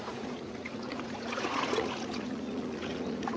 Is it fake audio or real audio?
fake